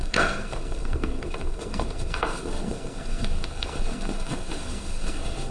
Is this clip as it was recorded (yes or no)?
no